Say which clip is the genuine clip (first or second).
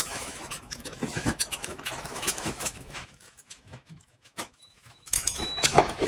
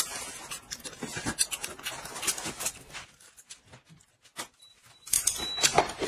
second